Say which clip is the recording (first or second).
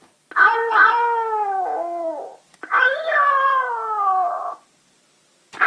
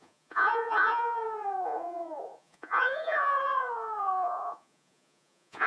first